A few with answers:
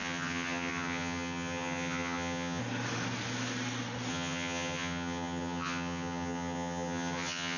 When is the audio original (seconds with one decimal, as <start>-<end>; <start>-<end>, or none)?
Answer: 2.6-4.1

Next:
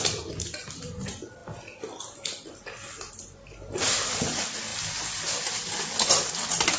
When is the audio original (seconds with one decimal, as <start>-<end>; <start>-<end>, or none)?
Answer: 0.0-6.8

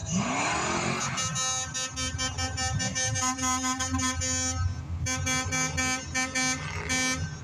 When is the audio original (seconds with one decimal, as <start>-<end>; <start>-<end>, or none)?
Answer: 1.0-7.4

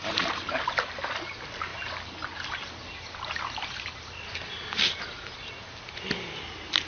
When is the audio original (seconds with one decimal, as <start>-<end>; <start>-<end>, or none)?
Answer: 0.0-6.9